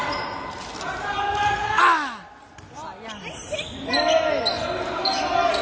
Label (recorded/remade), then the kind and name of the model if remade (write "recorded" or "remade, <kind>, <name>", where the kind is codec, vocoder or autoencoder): recorded